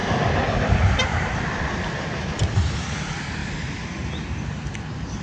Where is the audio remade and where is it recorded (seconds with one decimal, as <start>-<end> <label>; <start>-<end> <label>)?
0.0-3.4 remade; 3.4-4.4 recorded; 4.4-5.2 remade